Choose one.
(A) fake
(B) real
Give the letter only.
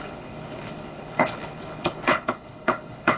A